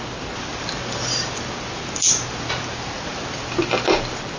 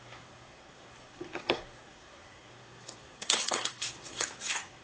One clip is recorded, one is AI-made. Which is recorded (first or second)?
first